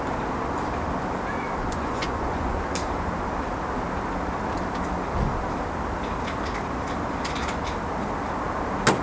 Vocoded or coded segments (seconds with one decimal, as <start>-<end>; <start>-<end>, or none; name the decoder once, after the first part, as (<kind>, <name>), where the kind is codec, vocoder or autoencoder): 1.6-2.6 (vocoder, Vocos)